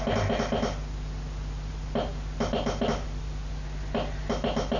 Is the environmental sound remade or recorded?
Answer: recorded